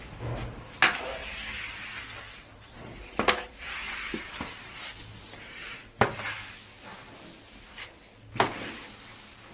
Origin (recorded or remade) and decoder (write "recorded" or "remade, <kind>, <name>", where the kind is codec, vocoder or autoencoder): recorded